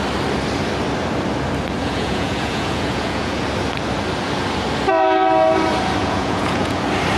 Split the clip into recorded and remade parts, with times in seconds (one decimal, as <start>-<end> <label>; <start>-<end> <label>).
0.0-1.8 recorded; 1.8-3.4 remade; 3.4-6.0 recorded; 6.0-6.8 remade; 6.8-7.2 recorded